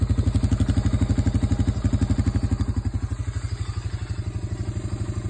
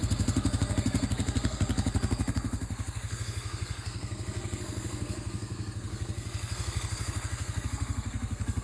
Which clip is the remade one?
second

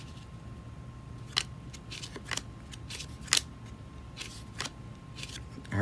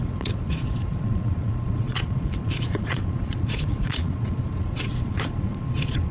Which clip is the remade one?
second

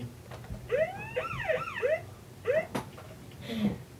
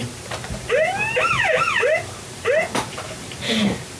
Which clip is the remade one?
second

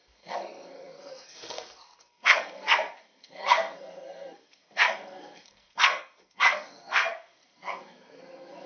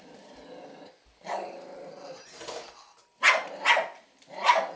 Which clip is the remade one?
first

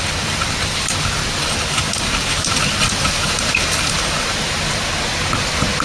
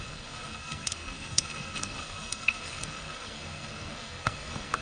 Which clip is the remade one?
second